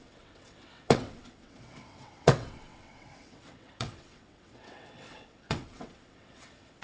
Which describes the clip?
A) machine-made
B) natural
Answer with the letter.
A